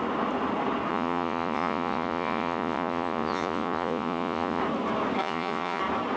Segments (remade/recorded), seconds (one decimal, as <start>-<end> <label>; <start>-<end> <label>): 0.0-0.9 recorded; 0.9-4.6 remade; 4.6-5.2 recorded; 5.2-5.8 remade; 5.8-6.2 recorded